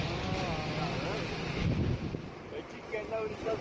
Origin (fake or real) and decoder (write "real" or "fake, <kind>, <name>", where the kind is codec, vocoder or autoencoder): real